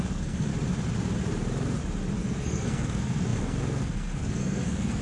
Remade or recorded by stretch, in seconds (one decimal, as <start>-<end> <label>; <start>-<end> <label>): 0.0-0.5 remade; 0.5-2.2 recorded; 2.2-5.0 remade